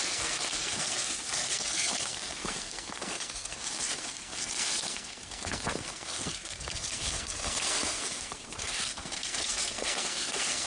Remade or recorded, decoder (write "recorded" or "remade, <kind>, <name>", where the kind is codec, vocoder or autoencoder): remade, codec, SNAC